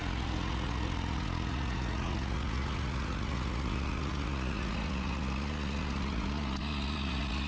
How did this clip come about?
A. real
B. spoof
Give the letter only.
B